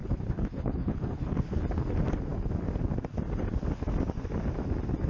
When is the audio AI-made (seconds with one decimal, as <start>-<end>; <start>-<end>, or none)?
0.0-1.4